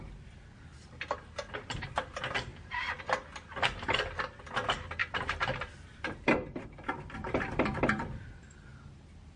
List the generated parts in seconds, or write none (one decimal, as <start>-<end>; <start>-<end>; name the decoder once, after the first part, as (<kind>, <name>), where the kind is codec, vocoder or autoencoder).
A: 5.0-7.8 (vocoder, BigVGAN v2); 8.7-9.4